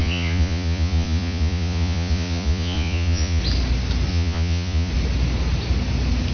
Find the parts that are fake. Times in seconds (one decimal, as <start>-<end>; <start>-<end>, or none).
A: 0.0-3.4; 4.1-4.9